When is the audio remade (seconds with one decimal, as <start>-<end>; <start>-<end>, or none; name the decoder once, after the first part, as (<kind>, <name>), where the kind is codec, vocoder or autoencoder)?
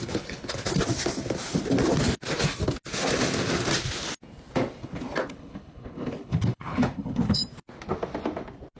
0.0-0.7 (codec, HILCodec); 5.2-7.4